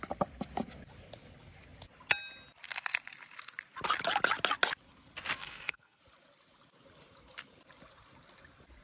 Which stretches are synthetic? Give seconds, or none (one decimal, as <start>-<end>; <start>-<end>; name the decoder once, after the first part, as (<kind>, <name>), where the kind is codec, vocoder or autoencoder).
5.4-6.0 (codec, SNAC)